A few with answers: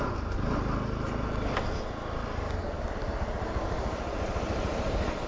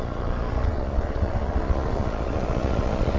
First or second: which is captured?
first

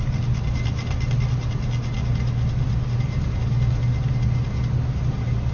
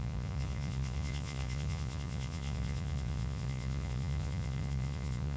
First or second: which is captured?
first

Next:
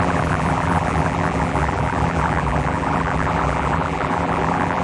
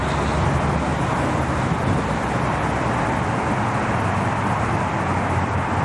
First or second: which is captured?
second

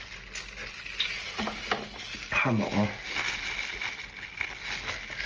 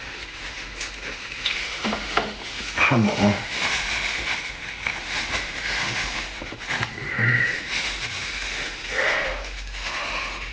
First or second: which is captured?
first